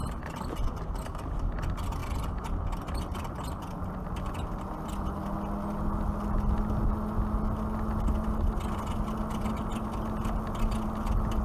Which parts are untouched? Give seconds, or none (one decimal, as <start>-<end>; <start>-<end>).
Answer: 0.8-2.0; 3.0-11.4